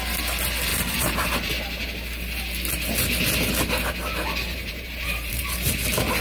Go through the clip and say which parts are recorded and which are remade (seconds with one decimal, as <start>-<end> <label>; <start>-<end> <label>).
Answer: 0.0-0.7 recorded; 0.7-1.5 remade; 1.5-4.5 recorded; 4.5-5.7 remade; 5.7-6.2 recorded